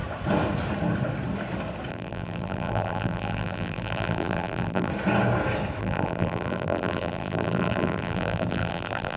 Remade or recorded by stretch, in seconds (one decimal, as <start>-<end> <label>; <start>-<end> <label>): 0.0-1.9 recorded; 1.9-4.9 remade; 4.9-5.8 recorded; 5.8-9.2 remade